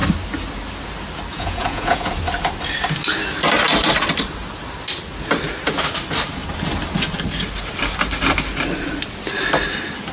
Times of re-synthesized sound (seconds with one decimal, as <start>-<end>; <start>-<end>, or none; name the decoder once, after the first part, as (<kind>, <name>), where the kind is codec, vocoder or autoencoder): 1.3-2.1 (vocoder, Vocos)